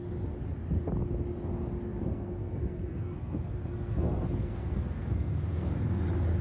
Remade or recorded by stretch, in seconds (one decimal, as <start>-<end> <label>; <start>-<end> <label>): 0.0-2.0 recorded; 2.0-5.7 remade; 5.7-6.4 recorded